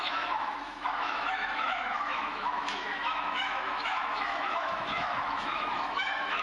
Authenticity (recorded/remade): remade